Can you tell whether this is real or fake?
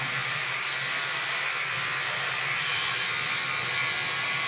fake